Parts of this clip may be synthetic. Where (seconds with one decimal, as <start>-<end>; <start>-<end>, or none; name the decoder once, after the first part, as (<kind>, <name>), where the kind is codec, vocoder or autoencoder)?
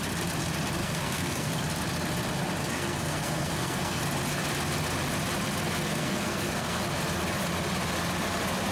0.8-1.5 (codec, SNAC); 2.6-4.0; 5.9-6.8